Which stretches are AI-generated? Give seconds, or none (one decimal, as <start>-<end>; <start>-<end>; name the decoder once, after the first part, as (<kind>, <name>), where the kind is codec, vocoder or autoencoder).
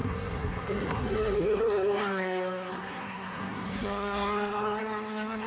0.0-5.5 (codec, SNAC)